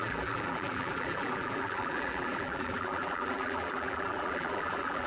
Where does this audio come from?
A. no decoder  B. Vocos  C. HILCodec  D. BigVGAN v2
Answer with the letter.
D